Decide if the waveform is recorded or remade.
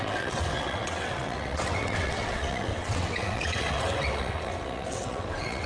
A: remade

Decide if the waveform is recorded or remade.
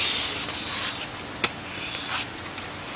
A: recorded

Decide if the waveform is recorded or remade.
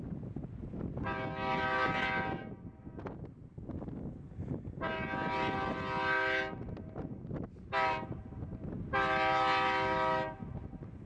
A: recorded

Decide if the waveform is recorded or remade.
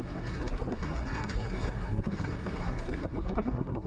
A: remade